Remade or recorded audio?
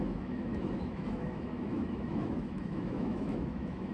remade